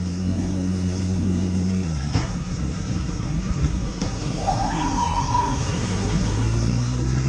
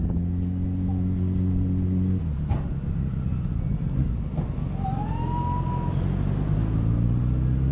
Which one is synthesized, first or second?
first